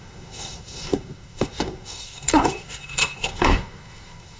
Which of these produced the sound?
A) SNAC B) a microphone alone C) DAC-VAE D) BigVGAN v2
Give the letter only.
A